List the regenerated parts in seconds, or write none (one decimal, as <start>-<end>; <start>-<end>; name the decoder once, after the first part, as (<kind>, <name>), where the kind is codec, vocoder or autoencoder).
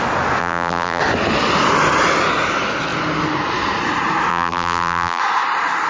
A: 0.4-1.0 (vocoder, BigVGAN v2); 4.3-5.2